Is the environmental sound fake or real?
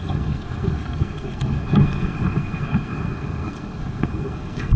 fake